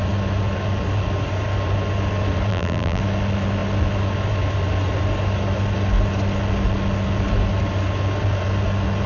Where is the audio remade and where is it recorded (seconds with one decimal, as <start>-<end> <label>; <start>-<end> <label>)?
0.0-2.5 recorded; 2.5-3.0 remade; 3.0-9.1 recorded